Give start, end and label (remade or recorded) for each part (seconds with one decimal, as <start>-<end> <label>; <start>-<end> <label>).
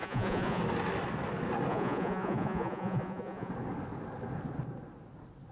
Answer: 0.0-0.6 remade; 0.6-1.7 recorded; 1.7-3.5 remade; 3.5-5.5 recorded